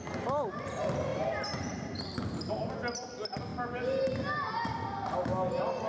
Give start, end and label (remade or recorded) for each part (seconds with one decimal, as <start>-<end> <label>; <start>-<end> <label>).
0.0-1.1 recorded; 1.1-2.5 remade; 2.5-5.9 recorded